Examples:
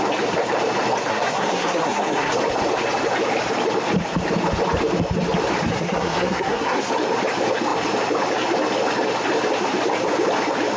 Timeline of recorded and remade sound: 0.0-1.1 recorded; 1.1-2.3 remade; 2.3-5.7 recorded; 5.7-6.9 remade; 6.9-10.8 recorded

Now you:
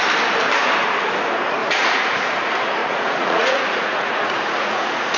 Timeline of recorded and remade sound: 0.0-1.6 recorded; 1.6-2.3 remade; 2.3-2.8 recorded; 2.8-5.2 remade